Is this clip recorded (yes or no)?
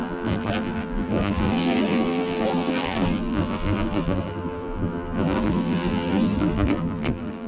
no